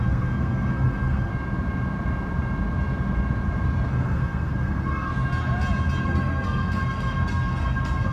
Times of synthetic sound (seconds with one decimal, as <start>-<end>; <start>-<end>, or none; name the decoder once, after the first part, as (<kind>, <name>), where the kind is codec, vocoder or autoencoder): 0.0-1.3 (codec, SNAC); 3.9-5.1; 6.0-8.1

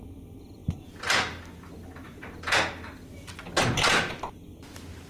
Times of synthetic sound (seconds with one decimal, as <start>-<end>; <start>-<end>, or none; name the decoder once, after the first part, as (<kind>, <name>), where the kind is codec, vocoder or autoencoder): none

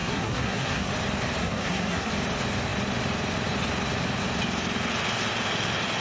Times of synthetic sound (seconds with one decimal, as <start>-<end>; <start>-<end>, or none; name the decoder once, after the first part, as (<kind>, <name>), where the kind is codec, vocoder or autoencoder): 0.0-0.9 (codec, SNAC); 1.4-2.1

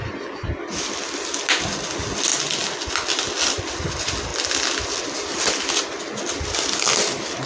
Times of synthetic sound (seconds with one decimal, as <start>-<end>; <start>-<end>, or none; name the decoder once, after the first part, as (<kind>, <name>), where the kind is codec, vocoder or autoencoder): none

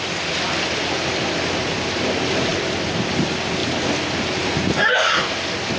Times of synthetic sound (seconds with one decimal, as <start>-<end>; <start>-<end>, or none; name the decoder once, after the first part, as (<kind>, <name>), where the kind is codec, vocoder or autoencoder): none

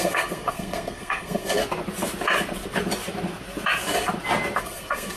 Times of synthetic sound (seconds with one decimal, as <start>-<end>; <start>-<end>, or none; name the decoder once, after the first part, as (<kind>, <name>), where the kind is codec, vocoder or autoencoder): 0.0-1.6 (codec, SNAC); 4.6-5.2

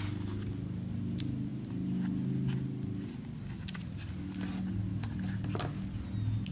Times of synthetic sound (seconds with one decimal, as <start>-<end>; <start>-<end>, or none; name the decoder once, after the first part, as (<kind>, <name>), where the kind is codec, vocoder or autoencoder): none

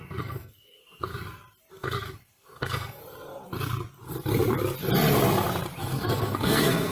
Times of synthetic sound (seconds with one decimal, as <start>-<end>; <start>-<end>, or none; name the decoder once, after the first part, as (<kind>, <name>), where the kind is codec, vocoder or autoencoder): 0.0-1.1 (codec, SNAC); 1.7-3.0; 5.8-6.9